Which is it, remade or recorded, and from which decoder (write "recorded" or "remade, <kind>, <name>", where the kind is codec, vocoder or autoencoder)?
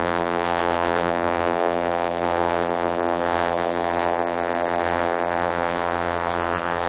remade, vocoder, BigVGAN v2